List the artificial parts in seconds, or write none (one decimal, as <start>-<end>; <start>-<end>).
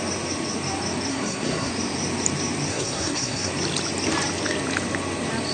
1.1-1.7; 2.7-3.5